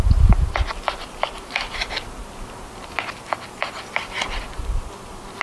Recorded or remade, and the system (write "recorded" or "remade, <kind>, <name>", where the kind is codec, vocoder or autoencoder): recorded